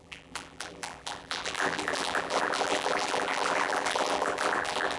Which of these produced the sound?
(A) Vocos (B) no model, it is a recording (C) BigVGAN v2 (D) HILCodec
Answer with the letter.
C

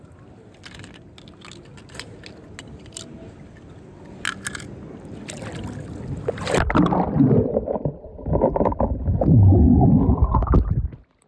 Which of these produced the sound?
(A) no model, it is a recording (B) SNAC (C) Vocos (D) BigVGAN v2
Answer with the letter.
A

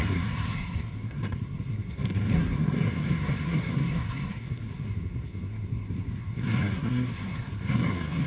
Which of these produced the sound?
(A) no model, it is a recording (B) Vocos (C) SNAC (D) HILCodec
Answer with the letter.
C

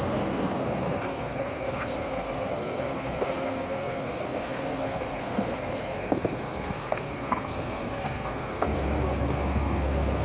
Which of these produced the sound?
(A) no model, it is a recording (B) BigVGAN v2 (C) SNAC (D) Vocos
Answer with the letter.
C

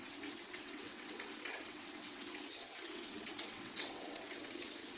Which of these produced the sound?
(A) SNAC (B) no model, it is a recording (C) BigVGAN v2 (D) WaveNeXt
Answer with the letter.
D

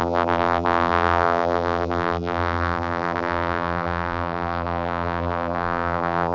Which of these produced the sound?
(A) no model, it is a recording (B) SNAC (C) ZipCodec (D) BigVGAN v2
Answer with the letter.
D